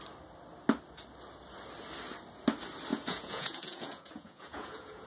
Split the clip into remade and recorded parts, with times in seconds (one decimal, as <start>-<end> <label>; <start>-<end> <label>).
0.0-2.9 recorded; 2.9-5.1 remade